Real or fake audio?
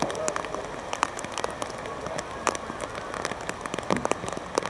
real